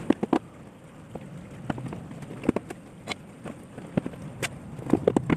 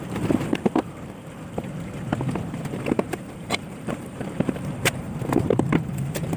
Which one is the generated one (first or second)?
second